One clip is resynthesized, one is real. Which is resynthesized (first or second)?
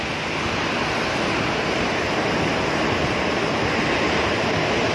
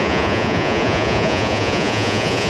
second